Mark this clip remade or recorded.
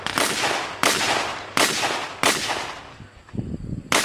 recorded